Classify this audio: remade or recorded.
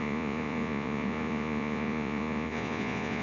remade